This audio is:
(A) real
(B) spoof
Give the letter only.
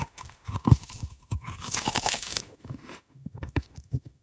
B